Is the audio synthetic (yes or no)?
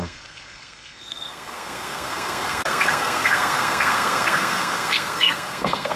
yes